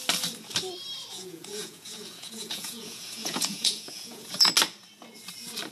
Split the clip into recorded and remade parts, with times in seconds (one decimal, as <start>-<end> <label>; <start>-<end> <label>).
0.0-1.1 recorded; 1.1-4.5 remade; 4.5-5.7 recorded